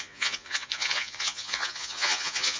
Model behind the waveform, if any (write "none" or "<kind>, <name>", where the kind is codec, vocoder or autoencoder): vocoder, Vocos